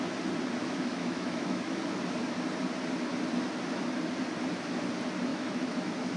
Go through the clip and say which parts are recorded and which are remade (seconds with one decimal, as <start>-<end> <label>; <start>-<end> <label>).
0.0-0.6 recorded; 0.6-1.8 remade; 1.8-5.3 recorded; 5.3-6.2 remade